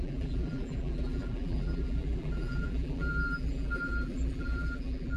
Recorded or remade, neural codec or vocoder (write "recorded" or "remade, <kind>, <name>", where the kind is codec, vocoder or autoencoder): remade, vocoder, BigVGAN v2